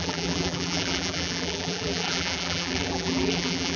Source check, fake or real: fake